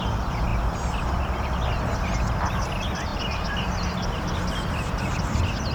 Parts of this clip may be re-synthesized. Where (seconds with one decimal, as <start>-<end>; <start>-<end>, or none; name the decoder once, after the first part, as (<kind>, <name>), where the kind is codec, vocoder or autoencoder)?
none